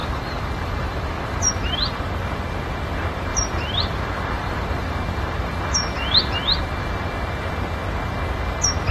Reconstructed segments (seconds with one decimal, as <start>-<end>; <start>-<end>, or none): 0.0-2.0; 3.3-7.1